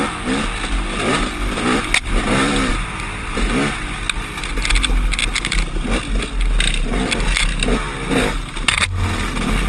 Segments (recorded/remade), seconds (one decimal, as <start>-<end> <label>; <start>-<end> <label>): 0.0-2.0 recorded; 2.0-2.7 remade; 2.7-9.7 recorded